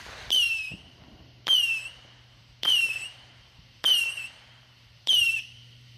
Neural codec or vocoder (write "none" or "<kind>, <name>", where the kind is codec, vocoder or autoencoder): vocoder, BigVGAN v2